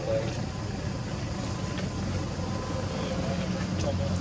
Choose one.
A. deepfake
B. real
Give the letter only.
B